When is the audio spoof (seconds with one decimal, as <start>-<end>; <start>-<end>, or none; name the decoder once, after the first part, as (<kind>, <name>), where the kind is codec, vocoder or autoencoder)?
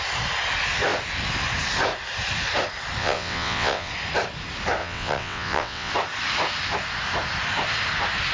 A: 3.0-3.9 (vocoder, WaveNeXt); 4.8-5.9